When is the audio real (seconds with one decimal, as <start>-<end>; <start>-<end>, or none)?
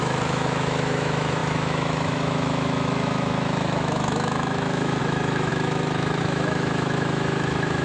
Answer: none